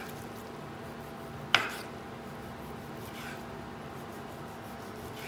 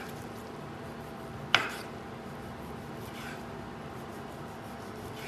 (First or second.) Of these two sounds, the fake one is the second